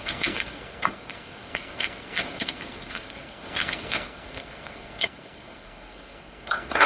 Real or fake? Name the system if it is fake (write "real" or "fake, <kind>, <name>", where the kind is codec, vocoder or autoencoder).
fake, codec, SNAC